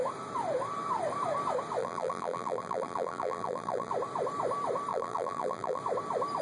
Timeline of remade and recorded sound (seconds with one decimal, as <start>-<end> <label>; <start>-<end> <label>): 0.0-1.8 recorded; 1.8-3.9 remade; 3.9-4.9 recorded; 4.9-5.8 remade; 5.8-6.4 recorded